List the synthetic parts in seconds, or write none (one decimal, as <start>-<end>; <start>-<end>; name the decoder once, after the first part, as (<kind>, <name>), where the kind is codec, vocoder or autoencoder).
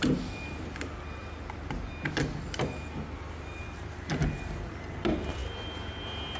none